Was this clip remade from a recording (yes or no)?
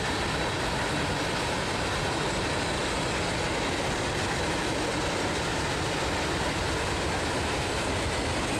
no